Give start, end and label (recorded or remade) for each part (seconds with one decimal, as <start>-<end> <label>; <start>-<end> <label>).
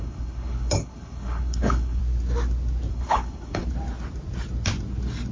0.0-2.0 remade; 2.0-2.9 recorded; 2.9-3.6 remade; 3.6-5.3 recorded